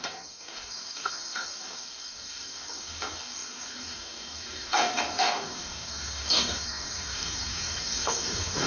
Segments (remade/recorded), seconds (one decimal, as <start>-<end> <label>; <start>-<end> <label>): 0.0-8.7 remade